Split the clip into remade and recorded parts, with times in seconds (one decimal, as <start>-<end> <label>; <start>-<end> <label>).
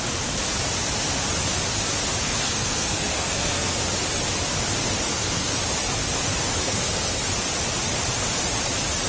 0.0-2.2 recorded; 2.2-3.8 remade; 3.8-5.1 recorded; 5.1-5.6 remade; 5.6-6.6 recorded; 6.6-7.2 remade; 7.2-9.1 recorded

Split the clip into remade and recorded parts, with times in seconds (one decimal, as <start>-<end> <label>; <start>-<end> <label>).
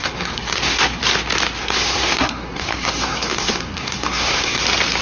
0.0-1.0 remade; 1.0-1.6 recorded; 1.6-4.6 remade; 4.6-5.0 recorded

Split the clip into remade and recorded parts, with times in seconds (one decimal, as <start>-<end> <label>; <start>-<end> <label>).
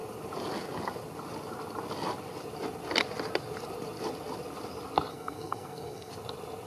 0.0-5.1 recorded; 5.1-6.1 remade; 6.1-6.7 recorded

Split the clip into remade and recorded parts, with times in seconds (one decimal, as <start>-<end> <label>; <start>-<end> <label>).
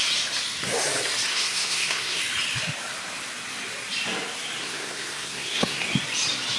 0.0-1.3 recorded; 1.3-2.2 remade; 2.2-4.6 recorded; 4.6-5.8 remade; 5.8-6.6 recorded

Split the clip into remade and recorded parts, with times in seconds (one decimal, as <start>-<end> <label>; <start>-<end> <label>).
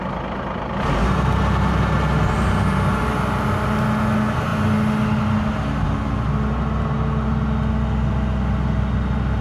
0.0-9.4 recorded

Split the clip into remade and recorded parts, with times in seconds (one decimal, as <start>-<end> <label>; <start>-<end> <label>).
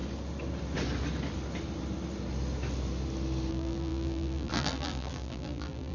0.0-3.5 recorded; 3.5-5.9 remade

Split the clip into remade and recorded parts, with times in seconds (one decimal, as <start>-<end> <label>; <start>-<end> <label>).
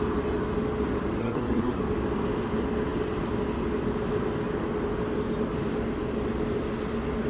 0.0-1.2 recorded; 1.2-1.8 remade; 1.8-7.3 recorded